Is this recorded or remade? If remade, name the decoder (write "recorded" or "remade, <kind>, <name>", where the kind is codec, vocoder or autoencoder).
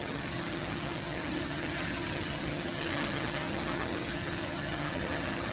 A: remade, vocoder, HiFi-GAN